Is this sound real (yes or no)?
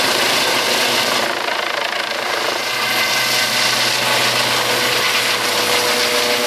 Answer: yes